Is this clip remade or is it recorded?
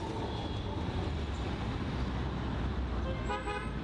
recorded